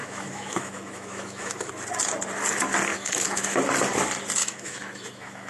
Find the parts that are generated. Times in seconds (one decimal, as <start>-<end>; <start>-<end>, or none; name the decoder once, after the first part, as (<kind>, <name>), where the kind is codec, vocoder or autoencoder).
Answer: 0.0-1.7 (autoencoder, DAC-VAE); 2.9-3.6; 4.4-5.5